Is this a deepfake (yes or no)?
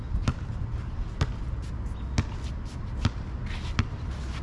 no